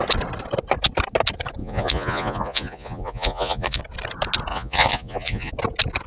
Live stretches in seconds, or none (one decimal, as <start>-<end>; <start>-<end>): 0.0-1.6; 3.8-4.5; 5.5-6.1